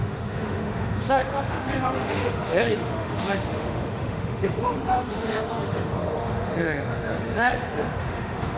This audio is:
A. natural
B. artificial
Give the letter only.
B